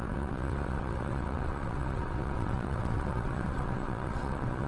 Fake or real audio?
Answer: fake